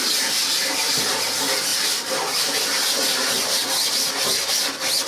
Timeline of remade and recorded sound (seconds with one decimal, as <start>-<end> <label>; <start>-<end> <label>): 0.0-1.7 recorded; 1.7-4.1 remade; 4.1-5.1 recorded